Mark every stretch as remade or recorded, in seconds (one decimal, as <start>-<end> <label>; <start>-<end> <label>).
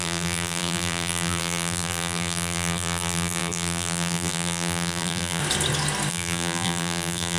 0.0-5.4 remade; 5.4-6.1 recorded; 6.1-7.4 remade